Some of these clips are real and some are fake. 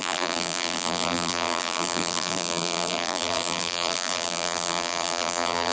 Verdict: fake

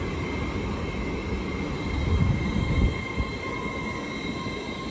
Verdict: real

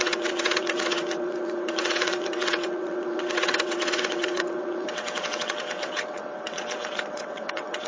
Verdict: fake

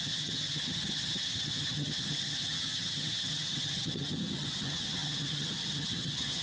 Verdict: fake